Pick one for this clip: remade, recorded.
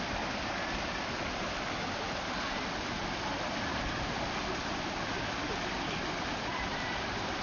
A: recorded